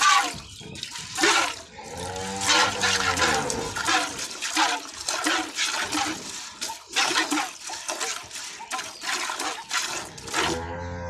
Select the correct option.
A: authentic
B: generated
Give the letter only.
A